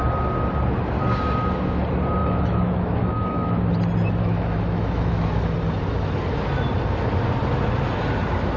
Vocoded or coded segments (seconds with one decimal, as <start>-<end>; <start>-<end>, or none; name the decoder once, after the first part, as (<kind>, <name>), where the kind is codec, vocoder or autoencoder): 2.2-3.6 (autoencoder, DAC-VAE); 4.2-5.3